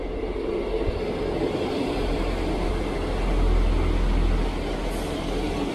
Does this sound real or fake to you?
real